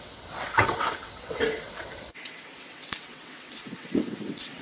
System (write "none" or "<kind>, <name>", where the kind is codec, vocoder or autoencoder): vocoder, WaveNeXt